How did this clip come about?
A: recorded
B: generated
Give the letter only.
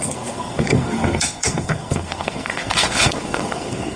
B